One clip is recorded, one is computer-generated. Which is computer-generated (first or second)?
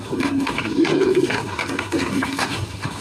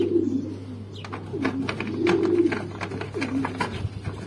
first